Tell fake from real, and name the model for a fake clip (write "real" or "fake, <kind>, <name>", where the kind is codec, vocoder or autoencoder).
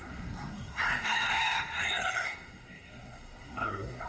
fake, codec, SNAC